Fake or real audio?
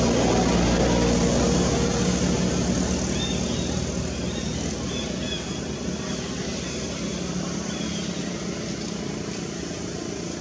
real